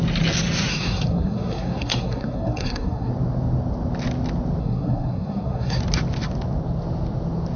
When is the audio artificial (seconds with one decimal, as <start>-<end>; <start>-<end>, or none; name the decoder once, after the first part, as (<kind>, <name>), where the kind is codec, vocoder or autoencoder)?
0.7-3.1 (codec, SNAC); 4.6-5.8